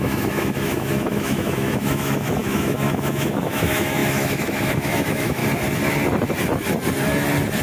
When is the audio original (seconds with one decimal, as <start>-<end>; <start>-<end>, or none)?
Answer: 5.4-7.6

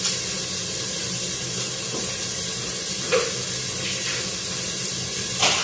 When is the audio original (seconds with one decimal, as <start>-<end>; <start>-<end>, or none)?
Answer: 0.0-5.6

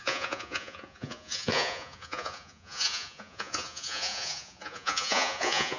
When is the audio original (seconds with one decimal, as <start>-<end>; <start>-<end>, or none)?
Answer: none